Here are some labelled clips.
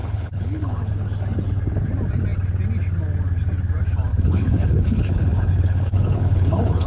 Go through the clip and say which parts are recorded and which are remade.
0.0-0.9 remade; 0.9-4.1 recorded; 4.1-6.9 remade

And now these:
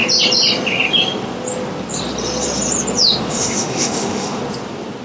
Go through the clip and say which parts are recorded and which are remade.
0.0-3.3 recorded; 3.3-4.4 remade; 4.4-5.0 recorded

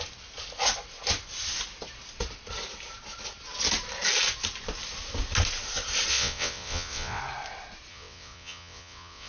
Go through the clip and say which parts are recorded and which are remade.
0.0-6.1 recorded; 6.1-7.2 remade; 7.2-7.9 recorded; 7.9-9.3 remade